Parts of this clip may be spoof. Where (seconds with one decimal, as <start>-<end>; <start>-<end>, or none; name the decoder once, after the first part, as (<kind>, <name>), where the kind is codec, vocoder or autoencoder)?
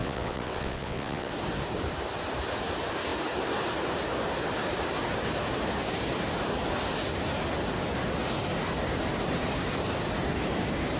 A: 0.0-1.3 (vocoder, WaveNeXt)